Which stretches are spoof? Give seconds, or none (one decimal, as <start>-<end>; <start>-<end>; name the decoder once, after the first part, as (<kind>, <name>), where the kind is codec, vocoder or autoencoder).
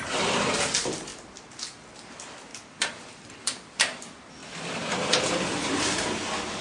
0.0-1.1 (vocoder, BigVGAN v2); 2.1-4.4